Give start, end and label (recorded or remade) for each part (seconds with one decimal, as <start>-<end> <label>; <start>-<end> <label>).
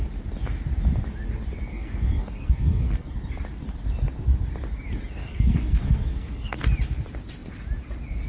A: 0.0-1.7 recorded; 1.7-3.1 remade; 3.1-5.2 recorded; 5.2-6.6 remade; 6.6-8.3 recorded